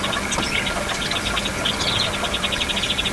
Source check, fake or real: real